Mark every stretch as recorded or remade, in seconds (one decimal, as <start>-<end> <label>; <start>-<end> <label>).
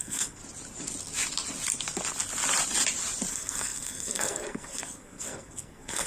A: 0.0-0.4 remade; 0.4-3.3 recorded; 3.3-6.1 remade